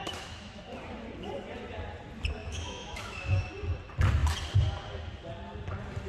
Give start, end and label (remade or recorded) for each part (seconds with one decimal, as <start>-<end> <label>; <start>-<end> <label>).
0.0-0.6 remade; 0.6-2.4 recorded; 2.4-3.5 remade; 3.5-6.1 recorded